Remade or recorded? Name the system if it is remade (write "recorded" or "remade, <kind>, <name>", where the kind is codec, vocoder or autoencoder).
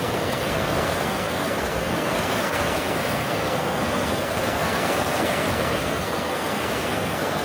remade, codec, SNAC